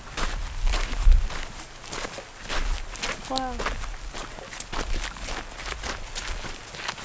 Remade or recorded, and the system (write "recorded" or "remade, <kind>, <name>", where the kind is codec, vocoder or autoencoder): recorded